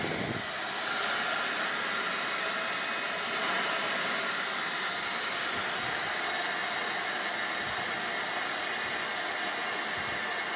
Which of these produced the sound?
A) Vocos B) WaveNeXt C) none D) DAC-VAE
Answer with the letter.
C